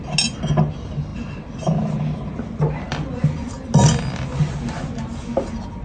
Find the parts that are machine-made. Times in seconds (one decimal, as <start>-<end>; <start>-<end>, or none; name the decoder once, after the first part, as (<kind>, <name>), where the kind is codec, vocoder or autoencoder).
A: none